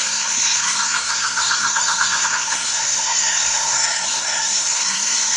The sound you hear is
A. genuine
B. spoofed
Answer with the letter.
B